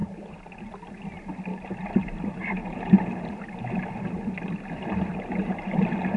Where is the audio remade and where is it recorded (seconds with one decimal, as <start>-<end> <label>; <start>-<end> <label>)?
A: 0.0-1.5 recorded; 1.5-3.4 remade; 3.4-5.1 recorded; 5.1-5.8 remade; 5.8-6.2 recorded